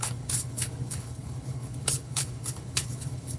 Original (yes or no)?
no